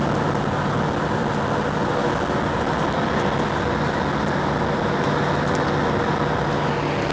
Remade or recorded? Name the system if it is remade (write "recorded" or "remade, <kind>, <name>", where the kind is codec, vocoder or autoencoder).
recorded